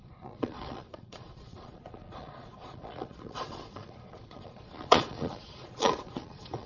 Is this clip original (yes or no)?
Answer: no